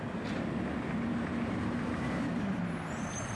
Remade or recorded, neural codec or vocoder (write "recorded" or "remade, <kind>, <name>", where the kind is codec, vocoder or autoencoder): remade, vocoder, BigVGAN v2